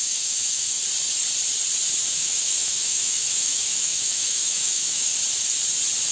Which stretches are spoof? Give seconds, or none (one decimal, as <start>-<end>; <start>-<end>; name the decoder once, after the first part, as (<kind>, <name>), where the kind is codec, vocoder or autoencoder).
0.0-0.8 (autoencoder, DAC-VAE); 2.1-5.1